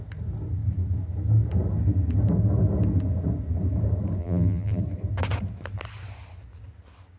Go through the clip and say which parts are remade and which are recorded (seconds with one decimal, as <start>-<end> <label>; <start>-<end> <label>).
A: 0.0-4.2 recorded; 4.2-4.8 remade; 4.8-7.2 recorded